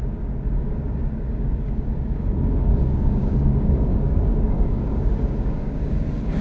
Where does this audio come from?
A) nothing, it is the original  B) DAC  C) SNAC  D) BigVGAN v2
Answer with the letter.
B